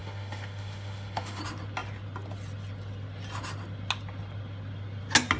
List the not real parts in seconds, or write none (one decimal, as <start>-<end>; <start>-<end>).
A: 0.0-1.4